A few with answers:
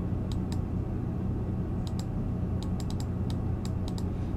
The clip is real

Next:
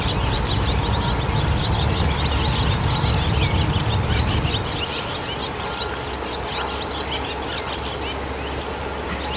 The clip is real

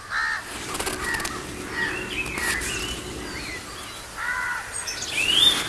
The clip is real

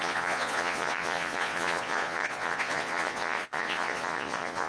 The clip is fake